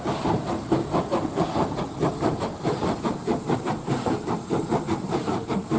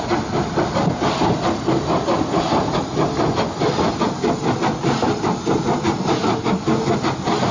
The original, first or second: second